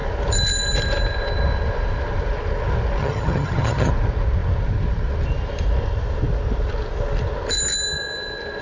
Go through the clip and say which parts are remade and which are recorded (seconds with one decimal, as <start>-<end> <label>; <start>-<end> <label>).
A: 0.0-3.0 recorded; 3.0-3.9 remade; 3.9-8.6 recorded